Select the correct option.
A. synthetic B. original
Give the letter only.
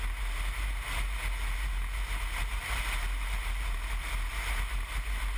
B